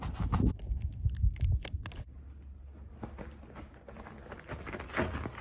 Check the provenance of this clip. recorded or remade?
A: recorded